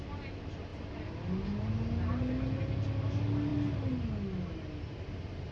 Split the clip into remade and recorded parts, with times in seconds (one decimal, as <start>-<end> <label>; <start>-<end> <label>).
0.0-5.5 recorded